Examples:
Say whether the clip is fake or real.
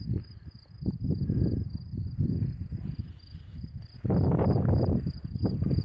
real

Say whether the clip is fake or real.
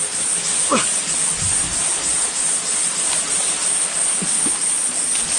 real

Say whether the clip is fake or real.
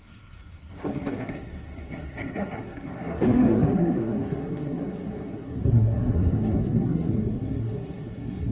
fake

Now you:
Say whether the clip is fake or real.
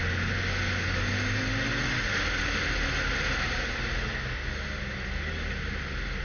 real